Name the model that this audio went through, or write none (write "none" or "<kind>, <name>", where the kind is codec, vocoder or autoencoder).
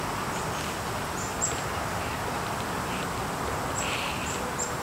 none